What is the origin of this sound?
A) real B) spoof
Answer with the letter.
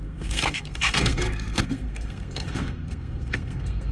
B